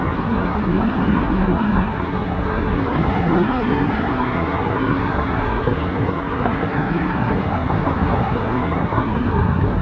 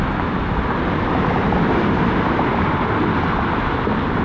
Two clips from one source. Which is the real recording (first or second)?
second